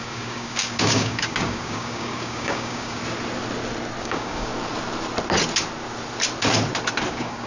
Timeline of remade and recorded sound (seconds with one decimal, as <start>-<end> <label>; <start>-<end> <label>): 0.0-3.0 remade; 3.0-4.0 recorded; 4.0-4.5 remade; 4.5-7.1 recorded; 7.1-7.5 remade

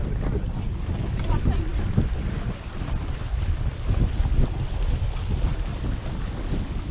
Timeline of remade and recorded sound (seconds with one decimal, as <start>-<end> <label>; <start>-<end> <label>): 0.0-6.9 recorded

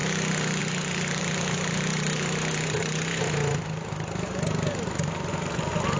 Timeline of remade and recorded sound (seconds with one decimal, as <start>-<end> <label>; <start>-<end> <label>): 0.0-0.6 recorded; 0.6-6.0 remade

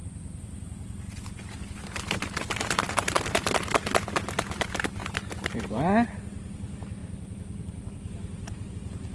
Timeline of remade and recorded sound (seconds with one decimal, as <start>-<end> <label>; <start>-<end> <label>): 0.0-5.0 recorded; 5.0-5.6 remade; 5.6-7.0 recorded; 7.0-8.7 remade; 8.7-9.1 recorded